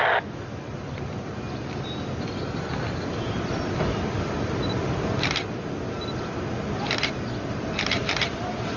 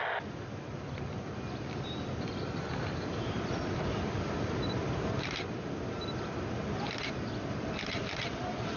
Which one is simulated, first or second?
second